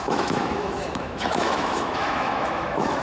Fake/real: fake